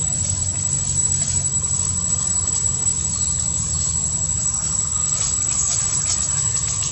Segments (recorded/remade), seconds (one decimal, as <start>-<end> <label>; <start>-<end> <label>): 0.0-0.4 remade; 0.4-1.0 recorded; 1.0-1.5 remade; 1.5-2.1 recorded; 2.1-2.9 remade; 2.9-6.9 recorded